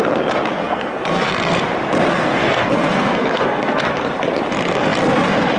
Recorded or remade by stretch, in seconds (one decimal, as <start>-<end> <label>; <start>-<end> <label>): 0.0-0.6 recorded; 0.6-1.3 remade; 1.3-2.1 recorded; 2.1-3.8 remade; 3.8-5.6 recorded